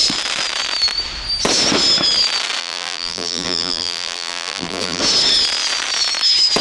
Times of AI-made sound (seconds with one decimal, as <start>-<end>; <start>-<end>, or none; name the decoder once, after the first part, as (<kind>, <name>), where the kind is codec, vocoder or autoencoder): 2.6-5.0 (vocoder, BigVGAN v2)